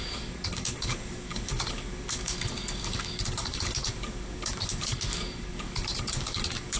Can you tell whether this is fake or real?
fake